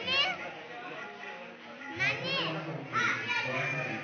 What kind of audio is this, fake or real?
real